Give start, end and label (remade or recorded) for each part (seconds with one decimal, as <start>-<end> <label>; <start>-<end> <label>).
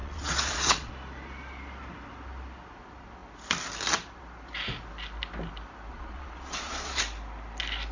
0.0-0.9 remade; 0.9-5.9 recorded; 5.9-7.0 remade; 7.0-7.9 recorded